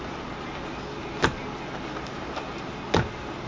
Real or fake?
real